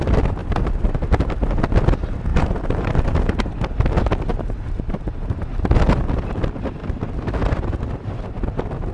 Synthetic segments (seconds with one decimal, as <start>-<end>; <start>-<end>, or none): 0.4-1.2; 2.3-3.7; 4.3-5.4